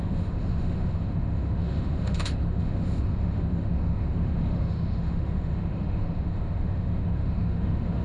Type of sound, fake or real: fake